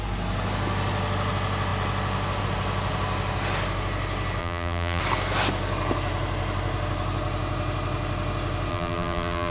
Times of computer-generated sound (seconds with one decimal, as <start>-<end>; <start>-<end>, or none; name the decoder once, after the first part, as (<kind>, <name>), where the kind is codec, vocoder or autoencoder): 4.4-5.0 (vocoder, BigVGAN v2); 8.7-9.5